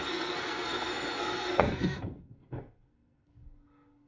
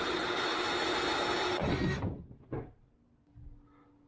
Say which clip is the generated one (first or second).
first